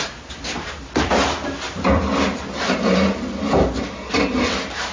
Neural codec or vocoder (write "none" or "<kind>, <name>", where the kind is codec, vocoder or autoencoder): none